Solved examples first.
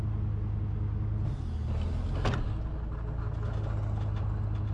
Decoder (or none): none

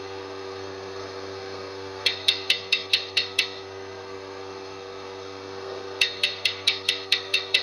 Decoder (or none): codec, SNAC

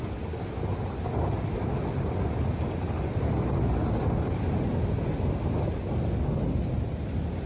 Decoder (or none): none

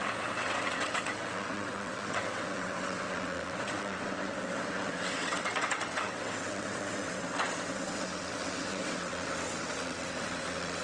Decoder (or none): vocoder, WaveNeXt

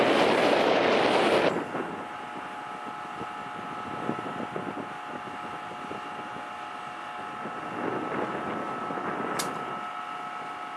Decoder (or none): none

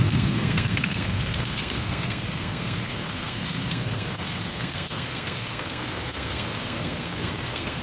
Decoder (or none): codec, SNAC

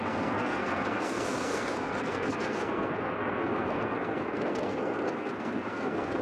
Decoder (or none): codec, SNAC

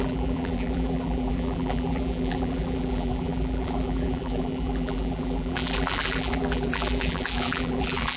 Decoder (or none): vocoder, BigVGAN v2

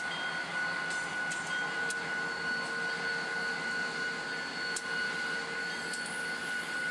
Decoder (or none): none